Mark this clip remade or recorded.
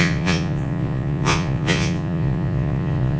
remade